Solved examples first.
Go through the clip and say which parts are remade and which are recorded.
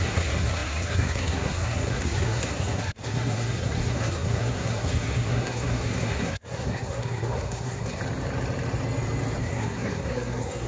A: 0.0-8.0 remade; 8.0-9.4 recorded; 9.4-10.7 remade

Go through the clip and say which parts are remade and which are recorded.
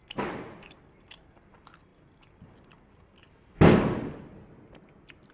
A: 0.0-5.3 recorded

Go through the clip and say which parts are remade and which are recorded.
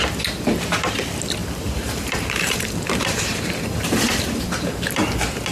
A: 0.0-1.4 recorded; 1.4-4.7 remade; 4.7-5.5 recorded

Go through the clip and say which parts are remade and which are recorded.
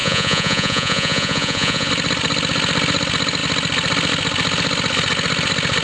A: 0.0-1.9 remade; 1.9-5.8 recorded